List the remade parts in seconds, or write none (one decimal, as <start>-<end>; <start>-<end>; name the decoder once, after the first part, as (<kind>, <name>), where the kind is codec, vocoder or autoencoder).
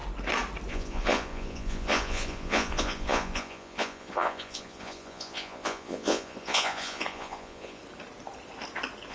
0.7-7.8 (vocoder, Vocos)